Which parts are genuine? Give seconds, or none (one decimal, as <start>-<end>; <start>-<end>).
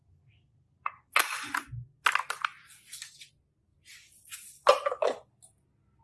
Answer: 0.0-6.0